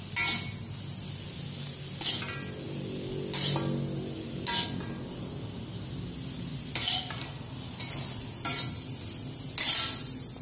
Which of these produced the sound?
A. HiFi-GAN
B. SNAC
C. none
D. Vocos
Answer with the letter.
C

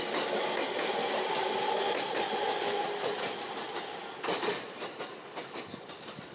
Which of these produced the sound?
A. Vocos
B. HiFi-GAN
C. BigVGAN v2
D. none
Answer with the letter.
D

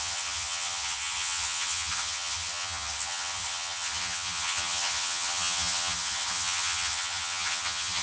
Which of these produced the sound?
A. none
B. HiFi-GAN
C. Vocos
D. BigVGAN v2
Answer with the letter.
B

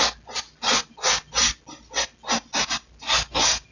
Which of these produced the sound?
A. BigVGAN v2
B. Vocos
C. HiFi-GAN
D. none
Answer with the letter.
D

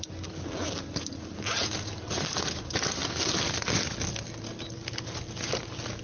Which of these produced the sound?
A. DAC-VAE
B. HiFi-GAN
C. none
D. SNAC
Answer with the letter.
C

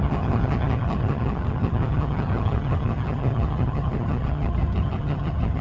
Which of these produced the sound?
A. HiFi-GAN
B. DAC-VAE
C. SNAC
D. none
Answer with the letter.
A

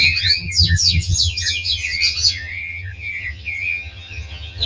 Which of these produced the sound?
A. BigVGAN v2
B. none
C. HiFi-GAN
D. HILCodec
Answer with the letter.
C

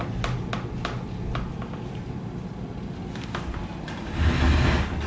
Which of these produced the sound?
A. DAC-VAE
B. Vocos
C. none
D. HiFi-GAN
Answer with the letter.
C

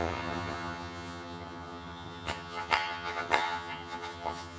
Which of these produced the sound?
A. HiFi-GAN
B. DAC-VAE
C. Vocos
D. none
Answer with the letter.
A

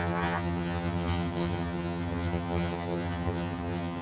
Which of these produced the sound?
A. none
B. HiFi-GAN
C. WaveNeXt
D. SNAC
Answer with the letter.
B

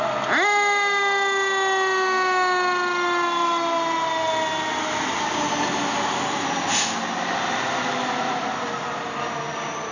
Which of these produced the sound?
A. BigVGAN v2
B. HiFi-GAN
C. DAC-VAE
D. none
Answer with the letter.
D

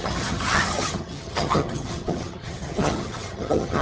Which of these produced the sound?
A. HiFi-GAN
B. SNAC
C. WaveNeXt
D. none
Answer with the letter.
A